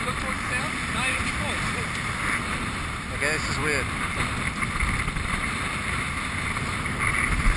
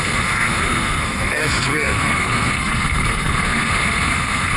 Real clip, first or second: first